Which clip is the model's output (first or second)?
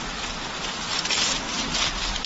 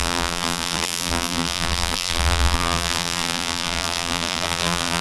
second